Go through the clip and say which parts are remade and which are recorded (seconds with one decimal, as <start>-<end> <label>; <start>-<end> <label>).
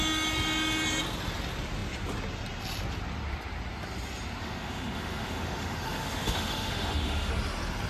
0.0-4.4 recorded; 4.4-7.3 remade; 7.3-7.9 recorded